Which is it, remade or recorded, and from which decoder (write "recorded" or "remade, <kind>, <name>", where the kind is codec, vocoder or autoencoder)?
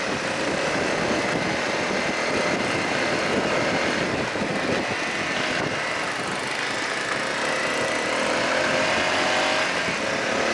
recorded